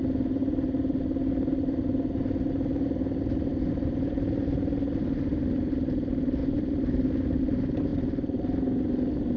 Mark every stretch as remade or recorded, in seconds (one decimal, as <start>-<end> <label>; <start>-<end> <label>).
0.0-9.4 recorded